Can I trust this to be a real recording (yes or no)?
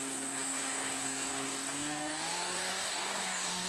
no